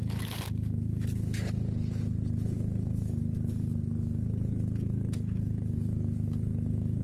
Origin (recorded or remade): remade